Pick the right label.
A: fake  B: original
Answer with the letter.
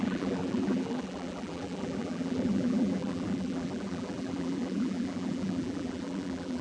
A